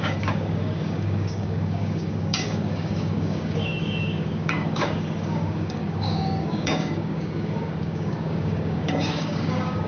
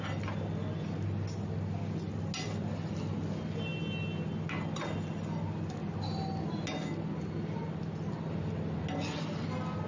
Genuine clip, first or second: second